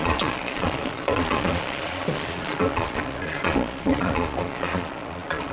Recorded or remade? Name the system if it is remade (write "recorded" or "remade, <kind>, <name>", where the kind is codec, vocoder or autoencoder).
remade, vocoder, Vocos